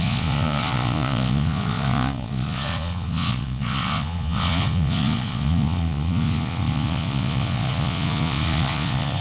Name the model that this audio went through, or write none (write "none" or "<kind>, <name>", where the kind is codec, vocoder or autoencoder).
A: vocoder, Vocos